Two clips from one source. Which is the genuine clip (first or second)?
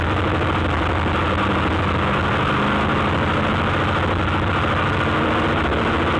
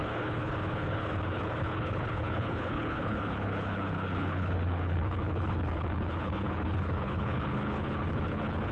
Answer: first